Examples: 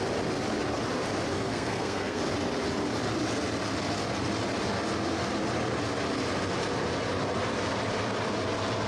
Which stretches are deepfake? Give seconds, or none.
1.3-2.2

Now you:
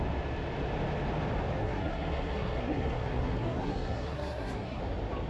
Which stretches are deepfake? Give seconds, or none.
1.6-4.8